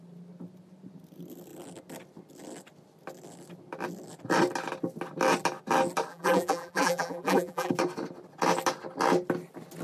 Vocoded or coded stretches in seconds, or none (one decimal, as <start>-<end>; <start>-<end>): 6.1-7.7